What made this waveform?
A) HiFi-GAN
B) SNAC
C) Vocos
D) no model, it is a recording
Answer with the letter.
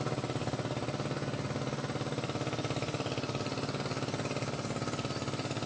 D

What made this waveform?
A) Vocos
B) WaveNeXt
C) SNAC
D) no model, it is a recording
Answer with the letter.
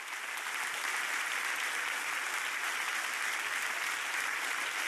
D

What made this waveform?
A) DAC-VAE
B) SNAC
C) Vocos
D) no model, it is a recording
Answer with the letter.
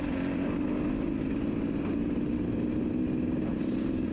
D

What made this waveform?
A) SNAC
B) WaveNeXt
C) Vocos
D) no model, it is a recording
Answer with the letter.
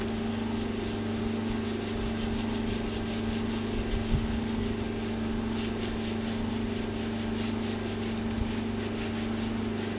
D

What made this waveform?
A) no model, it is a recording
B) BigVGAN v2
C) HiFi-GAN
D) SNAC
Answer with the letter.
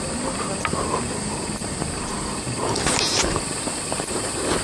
A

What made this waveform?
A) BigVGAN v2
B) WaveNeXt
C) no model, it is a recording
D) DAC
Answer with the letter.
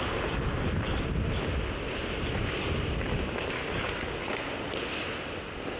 C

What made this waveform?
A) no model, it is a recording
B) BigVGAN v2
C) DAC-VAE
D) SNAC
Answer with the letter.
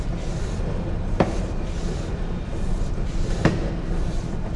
A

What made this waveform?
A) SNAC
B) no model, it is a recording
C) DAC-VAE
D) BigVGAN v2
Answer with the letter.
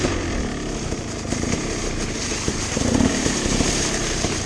D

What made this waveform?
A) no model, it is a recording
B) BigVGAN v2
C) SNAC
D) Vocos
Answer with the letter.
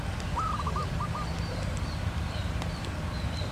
B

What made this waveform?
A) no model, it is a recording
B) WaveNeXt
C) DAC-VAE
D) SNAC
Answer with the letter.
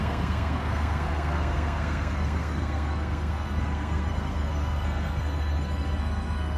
D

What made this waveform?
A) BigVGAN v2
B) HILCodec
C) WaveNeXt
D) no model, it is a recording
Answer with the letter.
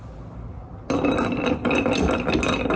D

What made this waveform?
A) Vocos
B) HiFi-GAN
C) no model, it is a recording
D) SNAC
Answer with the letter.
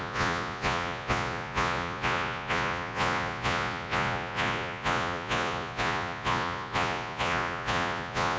A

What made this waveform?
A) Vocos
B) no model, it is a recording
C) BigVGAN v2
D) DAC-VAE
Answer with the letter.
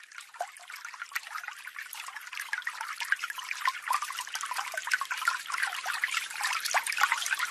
C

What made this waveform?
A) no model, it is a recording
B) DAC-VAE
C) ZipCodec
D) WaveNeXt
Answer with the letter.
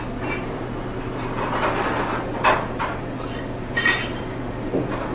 A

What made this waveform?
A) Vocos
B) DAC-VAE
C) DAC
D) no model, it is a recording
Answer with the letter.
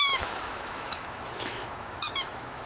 B